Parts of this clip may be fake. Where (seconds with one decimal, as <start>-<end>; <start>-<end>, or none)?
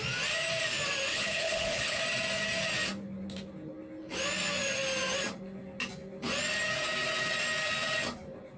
1.1-2.0